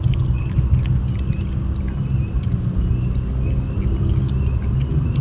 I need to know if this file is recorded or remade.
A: recorded